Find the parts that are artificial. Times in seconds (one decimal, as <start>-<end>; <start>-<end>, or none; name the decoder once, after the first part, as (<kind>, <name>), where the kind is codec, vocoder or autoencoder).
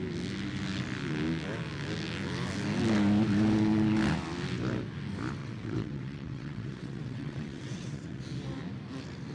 5.4-8.2 (vocoder, WaveNeXt)